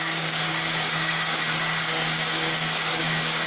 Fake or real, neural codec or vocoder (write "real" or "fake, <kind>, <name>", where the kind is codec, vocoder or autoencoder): fake, codec, DAC